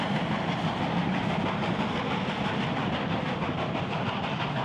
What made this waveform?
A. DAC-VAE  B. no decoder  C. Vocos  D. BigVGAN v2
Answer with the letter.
B